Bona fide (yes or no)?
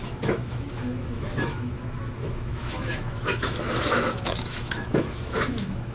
no